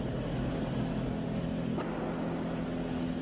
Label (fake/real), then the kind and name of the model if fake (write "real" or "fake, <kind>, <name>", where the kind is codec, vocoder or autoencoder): real